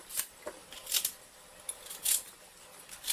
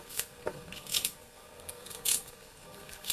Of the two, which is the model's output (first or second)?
second